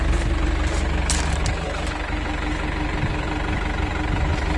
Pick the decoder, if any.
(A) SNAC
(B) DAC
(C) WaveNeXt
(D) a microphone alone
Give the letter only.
D